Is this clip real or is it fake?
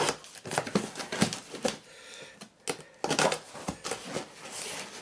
real